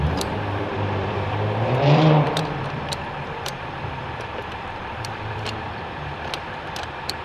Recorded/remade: remade